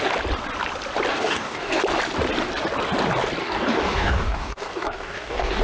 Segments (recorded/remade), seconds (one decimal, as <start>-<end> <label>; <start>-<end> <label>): 0.0-1.1 recorded; 1.1-1.8 remade; 1.8-3.4 recorded; 3.4-5.6 remade